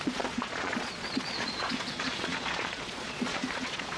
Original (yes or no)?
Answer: no